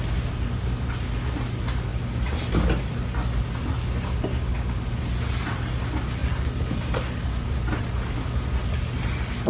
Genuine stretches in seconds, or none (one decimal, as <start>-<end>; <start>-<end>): 0.0-4.3; 4.8-9.5